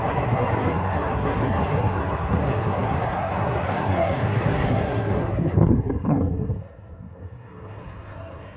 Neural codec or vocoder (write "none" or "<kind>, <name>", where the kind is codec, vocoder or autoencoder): codec, SNAC